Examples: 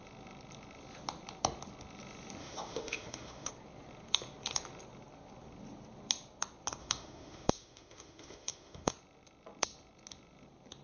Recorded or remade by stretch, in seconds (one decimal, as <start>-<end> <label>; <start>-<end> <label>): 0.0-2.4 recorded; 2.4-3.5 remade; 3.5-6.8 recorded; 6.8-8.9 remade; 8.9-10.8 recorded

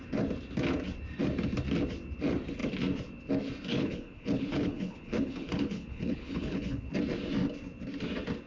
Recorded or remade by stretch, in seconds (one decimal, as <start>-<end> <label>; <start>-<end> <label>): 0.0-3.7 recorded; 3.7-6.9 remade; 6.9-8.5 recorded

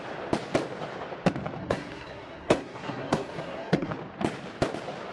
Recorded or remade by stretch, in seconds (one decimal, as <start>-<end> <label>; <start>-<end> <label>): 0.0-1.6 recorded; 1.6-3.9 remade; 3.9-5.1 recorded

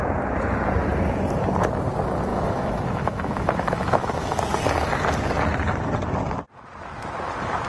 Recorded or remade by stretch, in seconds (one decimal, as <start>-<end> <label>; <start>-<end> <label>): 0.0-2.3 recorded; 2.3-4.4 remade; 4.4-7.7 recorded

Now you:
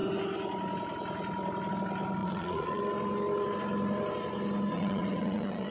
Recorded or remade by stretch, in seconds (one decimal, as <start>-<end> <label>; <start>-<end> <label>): 0.0-2.2 recorded; 2.2-2.8 remade; 2.8-4.7 recorded; 4.7-5.7 remade

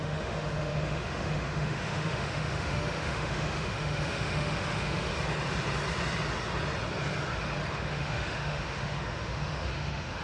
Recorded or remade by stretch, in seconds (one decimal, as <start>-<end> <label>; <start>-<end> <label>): 0.0-5.1 remade; 5.1-7.7 recorded; 7.7-10.2 remade

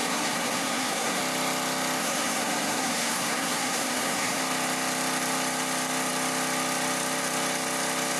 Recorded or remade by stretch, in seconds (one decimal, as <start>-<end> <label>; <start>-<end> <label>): 0.0-1.2 remade; 1.2-2.0 recorded; 2.0-4.4 remade; 4.4-8.2 recorded

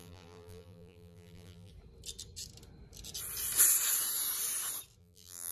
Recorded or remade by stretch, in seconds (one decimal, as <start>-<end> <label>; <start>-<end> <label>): 0.0-1.7 remade; 1.7-5.0 recorded; 5.0-5.5 remade